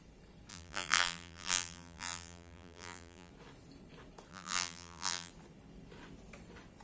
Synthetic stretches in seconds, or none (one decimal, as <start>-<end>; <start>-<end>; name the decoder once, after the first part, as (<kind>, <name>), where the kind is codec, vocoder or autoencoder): 0.5-3.3 (vocoder, BigVGAN v2); 4.3-5.3